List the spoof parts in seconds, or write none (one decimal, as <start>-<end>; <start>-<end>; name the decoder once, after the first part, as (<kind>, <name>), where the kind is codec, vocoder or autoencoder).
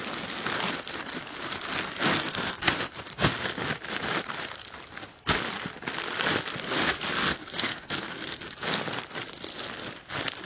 2.2-2.8 (codec, SNAC); 7.2-8.4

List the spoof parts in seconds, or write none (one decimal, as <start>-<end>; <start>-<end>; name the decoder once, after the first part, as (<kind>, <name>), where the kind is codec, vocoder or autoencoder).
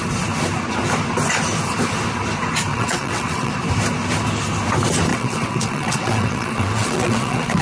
2.7-3.5 (vocoder, WaveNeXt); 5.1-7.6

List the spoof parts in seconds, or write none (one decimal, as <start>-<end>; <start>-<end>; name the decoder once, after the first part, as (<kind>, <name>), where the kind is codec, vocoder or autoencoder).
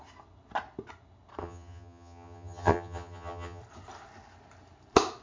1.4-3.6 (vocoder, HiFi-GAN)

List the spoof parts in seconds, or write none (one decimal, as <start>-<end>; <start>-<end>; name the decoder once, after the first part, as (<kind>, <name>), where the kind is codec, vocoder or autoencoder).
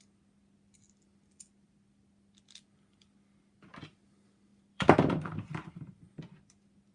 4.5-6.2 (vocoder, BigVGAN v2)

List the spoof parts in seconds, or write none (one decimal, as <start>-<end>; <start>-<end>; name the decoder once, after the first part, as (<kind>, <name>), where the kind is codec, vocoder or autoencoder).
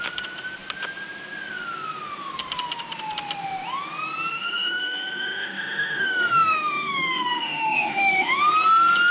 4.3-8.4 (autoencoder, DAC-VAE)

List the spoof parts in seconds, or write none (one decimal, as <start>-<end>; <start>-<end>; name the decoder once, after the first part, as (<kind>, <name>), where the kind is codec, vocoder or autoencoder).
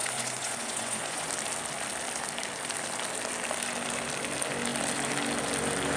0.0-1.3 (vocoder, Vocos)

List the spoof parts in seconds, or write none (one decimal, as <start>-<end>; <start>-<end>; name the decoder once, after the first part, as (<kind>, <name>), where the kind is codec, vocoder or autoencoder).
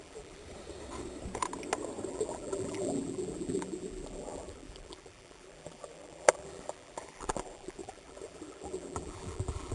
0.0-0.4 (vocoder, BigVGAN v2); 2.1-9.7